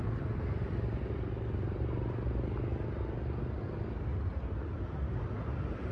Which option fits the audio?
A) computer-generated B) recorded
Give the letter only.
B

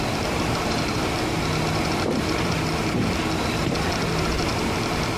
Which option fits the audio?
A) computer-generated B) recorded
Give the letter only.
B